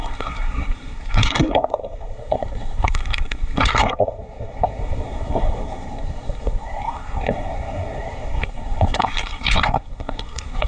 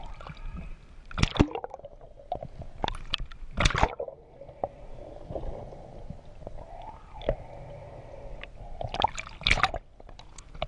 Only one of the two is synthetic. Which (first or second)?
first